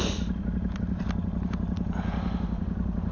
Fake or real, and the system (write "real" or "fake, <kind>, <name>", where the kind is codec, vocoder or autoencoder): real